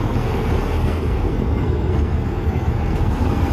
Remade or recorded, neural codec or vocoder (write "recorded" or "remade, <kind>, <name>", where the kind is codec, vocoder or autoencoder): remade, codec, SNAC